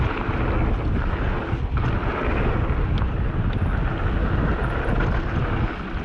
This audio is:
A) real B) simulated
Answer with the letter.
A